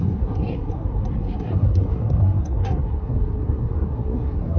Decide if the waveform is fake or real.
fake